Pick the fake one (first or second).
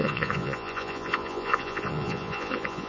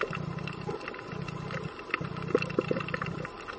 first